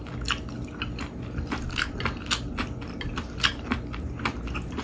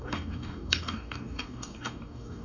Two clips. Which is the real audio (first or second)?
first